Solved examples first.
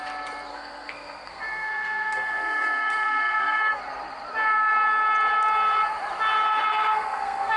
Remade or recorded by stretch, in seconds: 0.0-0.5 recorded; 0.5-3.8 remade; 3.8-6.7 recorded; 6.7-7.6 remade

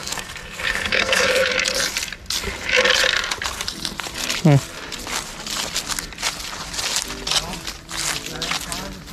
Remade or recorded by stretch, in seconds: 0.0-1.5 remade; 1.5-9.1 recorded

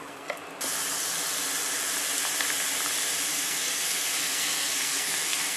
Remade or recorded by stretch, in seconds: 0.0-0.4 remade; 0.4-3.3 recorded; 3.3-5.6 remade

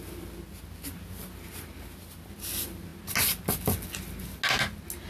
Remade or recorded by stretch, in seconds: 0.0-5.1 recorded

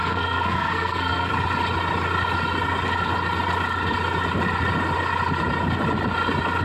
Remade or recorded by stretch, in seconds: 0.0-1.3 remade; 1.3-6.6 recorded

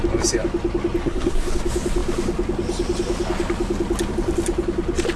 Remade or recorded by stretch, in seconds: 0.0-1.0 recorded; 1.0-1.5 remade; 1.5-5.2 recorded